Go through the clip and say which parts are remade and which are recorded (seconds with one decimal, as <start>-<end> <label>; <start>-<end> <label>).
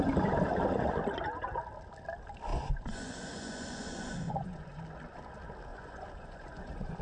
0.0-2.5 recorded; 2.5-4.8 remade; 4.8-5.7 recorded; 5.7-7.0 remade